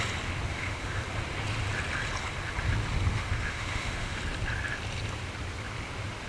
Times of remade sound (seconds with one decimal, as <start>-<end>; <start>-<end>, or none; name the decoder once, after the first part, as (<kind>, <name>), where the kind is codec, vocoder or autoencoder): 0.5-1.0 (autoencoder, DAC-VAE); 3.1-4.2